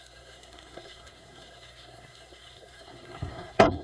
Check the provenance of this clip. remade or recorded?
remade